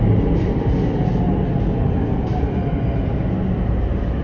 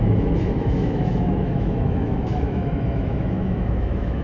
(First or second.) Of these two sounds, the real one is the first